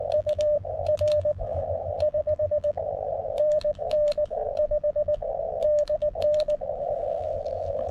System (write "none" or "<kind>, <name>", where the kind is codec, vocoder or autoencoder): vocoder, BigVGAN v2